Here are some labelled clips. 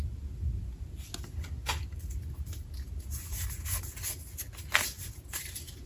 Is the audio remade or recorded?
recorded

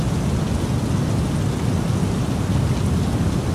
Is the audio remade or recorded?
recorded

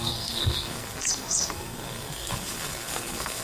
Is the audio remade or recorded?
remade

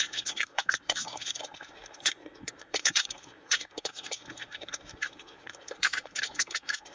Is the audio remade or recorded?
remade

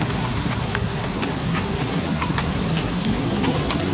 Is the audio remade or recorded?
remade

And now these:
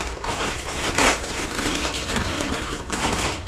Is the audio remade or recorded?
remade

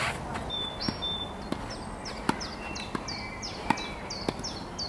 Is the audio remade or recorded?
recorded